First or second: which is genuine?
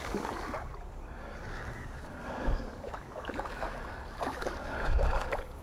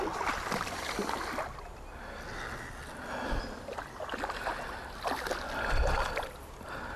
second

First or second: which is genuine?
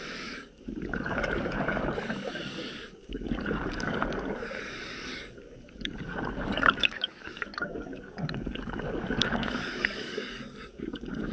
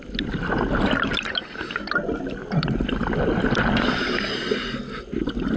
second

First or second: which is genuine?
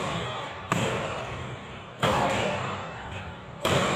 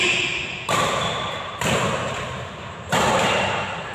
second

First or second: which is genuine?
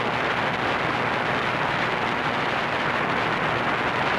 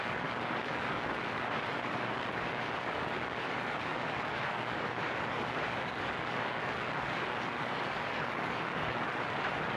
first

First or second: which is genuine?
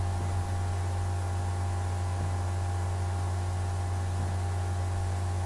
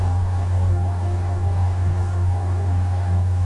first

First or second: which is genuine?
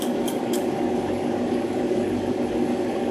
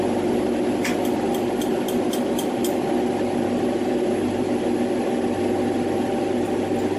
second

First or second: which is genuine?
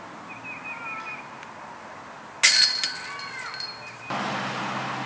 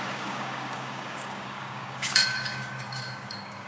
first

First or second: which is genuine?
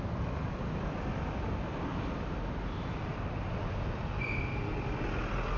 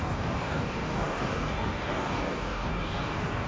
first